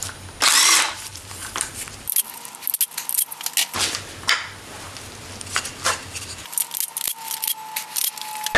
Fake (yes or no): no